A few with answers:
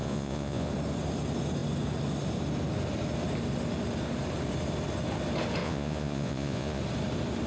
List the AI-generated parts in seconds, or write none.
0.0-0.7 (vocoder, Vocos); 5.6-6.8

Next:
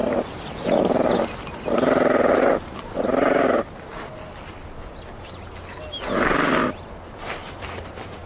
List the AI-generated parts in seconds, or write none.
none